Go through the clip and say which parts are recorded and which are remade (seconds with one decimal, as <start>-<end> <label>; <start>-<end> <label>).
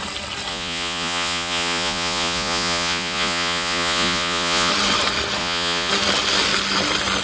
0.0-0.5 recorded; 0.5-4.7 remade; 4.7-5.4 recorded; 5.4-5.9 remade; 5.9-7.2 recorded